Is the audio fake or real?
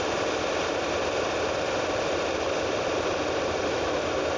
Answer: real